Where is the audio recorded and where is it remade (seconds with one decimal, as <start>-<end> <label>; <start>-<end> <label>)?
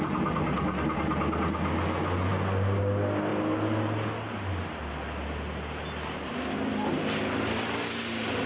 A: 0.0-3.3 recorded; 3.3-4.8 remade; 4.8-8.5 recorded